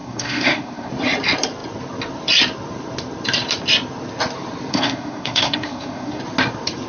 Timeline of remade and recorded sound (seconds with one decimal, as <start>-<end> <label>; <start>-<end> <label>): 0.0-0.9 remade; 0.9-4.7 recorded; 4.7-6.2 remade; 6.2-6.9 recorded